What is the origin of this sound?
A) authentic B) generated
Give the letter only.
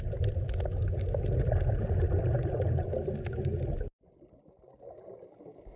A